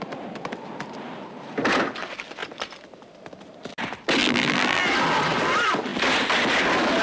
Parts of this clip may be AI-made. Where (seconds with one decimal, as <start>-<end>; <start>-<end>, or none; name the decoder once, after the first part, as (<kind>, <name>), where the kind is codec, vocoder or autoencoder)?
4.2-4.8 (vocoder, BigVGAN v2)